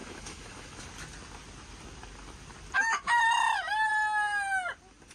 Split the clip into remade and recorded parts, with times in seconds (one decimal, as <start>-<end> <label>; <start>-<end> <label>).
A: 0.0-0.8 remade; 0.8-5.1 recorded